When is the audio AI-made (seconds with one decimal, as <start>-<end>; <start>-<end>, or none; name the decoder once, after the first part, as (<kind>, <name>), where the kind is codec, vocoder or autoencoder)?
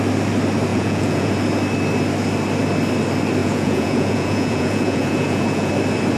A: 0.7-1.3 (vocoder, Vocos); 3.4-5.7